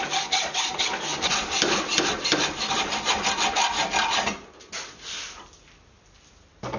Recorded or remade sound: recorded